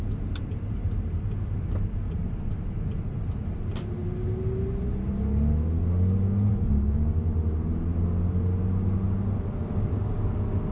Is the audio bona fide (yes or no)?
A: yes